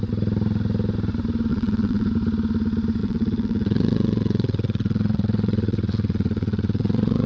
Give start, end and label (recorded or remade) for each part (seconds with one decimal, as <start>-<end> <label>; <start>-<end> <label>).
0.0-1.5 recorded; 1.5-2.1 remade; 2.1-3.0 recorded; 3.0-7.3 remade